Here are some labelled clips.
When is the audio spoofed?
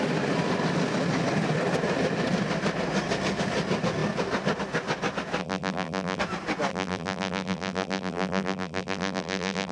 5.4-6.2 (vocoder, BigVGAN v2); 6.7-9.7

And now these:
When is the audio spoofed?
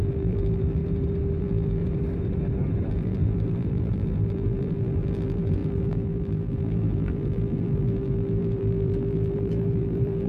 0.0-0.8 (vocoder, BigVGAN v2); 1.4-1.8; 2.9-10.3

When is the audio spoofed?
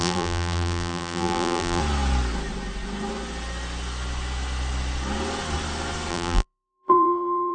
0.0-1.8 (vocoder, BigVGAN v2); 6.1-7.5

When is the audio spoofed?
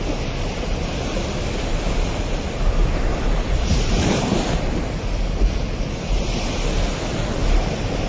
0.9-2.4 (vocoder, BigVGAN v2); 3.1-6.5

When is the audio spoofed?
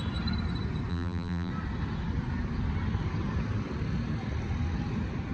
0.9-1.5 (vocoder, BigVGAN v2)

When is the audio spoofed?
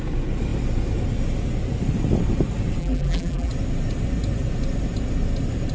2.8-3.5 (vocoder, BigVGAN v2)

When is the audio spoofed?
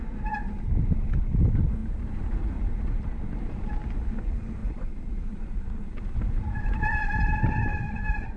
1.8-3.7 (vocoder, BigVGAN v2); 4.6-7.3; 7.7-8.4